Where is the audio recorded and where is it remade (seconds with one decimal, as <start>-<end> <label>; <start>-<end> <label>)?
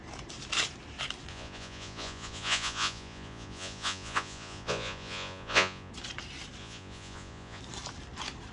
0.0-1.3 recorded; 1.3-5.9 remade; 5.9-6.6 recorded; 6.6-7.6 remade; 7.6-8.5 recorded